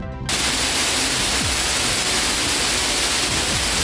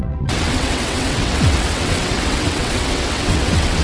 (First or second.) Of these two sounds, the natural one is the first